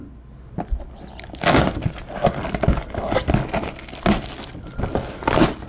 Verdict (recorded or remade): recorded